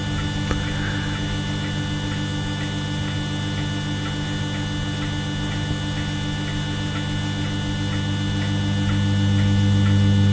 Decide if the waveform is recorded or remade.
recorded